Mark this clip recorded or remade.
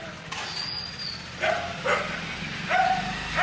recorded